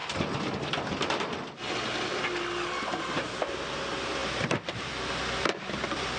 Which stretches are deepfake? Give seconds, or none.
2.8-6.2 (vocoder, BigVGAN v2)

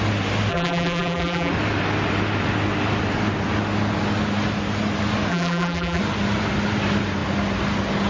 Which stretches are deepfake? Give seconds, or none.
0.5-1.5 (vocoder, BigVGAN v2); 5.3-6.0

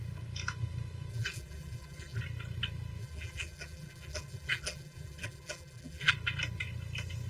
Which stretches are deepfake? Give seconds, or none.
1.1-2.2 (vocoder, BigVGAN v2); 3.0-6.1

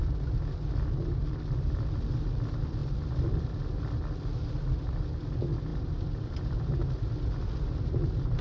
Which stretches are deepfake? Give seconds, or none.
2.8-3.8 (vocoder, BigVGAN v2); 5.7-8.4

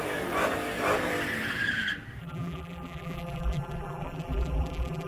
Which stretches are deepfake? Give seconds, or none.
2.2-5.1 (vocoder, BigVGAN v2)

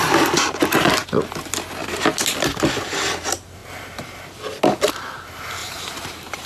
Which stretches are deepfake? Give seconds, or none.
5.6-6.5 (vocoder, BigVGAN v2)

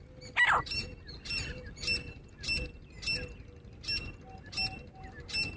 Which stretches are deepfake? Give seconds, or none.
none

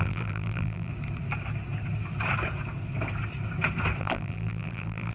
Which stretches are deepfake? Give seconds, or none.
0.0-0.9 (vocoder, BigVGAN v2); 4.0-5.1